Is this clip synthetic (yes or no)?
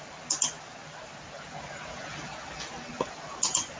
no